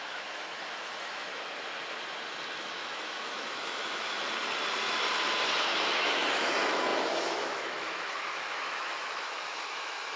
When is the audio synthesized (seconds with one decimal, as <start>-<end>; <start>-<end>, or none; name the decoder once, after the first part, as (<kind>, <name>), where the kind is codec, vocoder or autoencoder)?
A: 0.0-1.3 (autoencoder, DAC-VAE); 2.6-4.2; 5.6-10.2